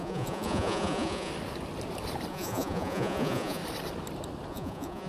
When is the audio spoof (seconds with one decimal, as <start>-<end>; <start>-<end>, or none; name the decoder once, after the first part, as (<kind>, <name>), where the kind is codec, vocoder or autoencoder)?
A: 0.0-1.3 (vocoder, Vocos); 2.3-3.6; 4.5-5.1